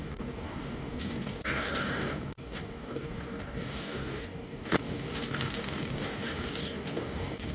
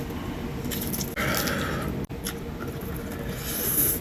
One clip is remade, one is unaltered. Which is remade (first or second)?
first